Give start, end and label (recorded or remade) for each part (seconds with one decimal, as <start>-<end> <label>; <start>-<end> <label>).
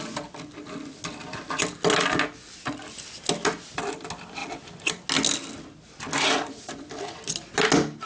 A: 0.0-8.1 recorded